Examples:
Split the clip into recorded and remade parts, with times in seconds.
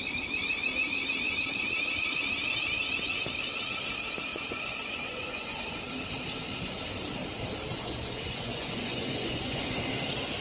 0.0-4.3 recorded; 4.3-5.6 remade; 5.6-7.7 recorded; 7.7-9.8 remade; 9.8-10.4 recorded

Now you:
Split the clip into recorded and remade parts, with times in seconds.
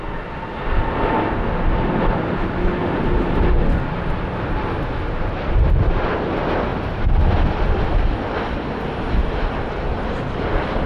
0.0-10.9 recorded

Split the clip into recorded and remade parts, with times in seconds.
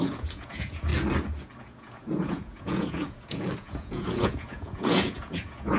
0.0-0.9 remade; 0.9-1.6 recorded; 1.6-5.8 remade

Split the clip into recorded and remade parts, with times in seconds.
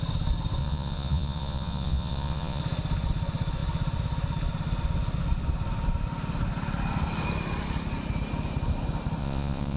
0.0-0.6 recorded; 0.6-2.6 remade; 2.6-9.2 recorded; 9.2-9.8 remade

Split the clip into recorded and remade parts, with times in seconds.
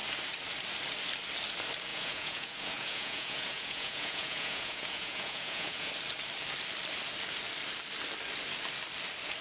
0.0-1.9 recorded; 1.9-5.9 remade; 5.9-9.4 recorded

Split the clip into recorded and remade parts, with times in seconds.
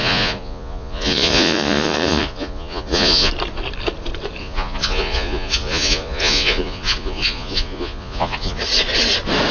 0.0-3.3 remade; 3.3-4.4 recorded; 4.4-8.6 remade; 8.6-9.5 recorded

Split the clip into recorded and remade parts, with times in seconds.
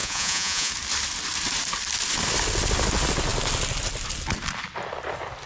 0.0-0.7 remade; 0.7-5.5 recorded